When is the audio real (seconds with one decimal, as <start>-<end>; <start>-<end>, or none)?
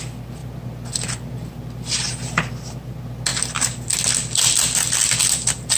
0.0-5.8